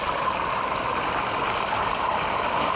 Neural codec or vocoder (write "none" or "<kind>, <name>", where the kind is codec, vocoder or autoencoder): none